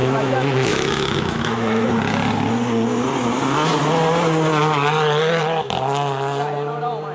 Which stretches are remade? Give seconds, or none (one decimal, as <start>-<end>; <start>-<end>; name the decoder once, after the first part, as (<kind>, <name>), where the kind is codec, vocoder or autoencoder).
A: 0.0-1.9 (autoencoder, DAC-VAE)